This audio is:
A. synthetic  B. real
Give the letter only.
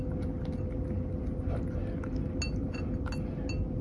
B